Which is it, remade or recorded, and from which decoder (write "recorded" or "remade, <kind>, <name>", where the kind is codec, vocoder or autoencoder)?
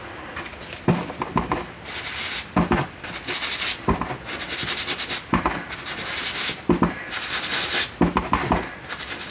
recorded